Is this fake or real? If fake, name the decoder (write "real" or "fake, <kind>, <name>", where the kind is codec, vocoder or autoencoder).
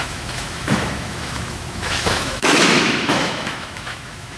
fake, autoencoder, DAC-VAE